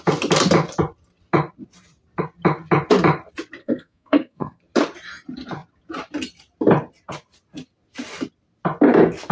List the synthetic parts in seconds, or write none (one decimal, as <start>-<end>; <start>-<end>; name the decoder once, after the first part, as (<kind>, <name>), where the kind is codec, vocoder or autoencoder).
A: 3.6-4.6 (codec, SNAC)